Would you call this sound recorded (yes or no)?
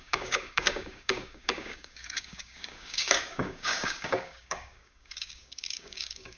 no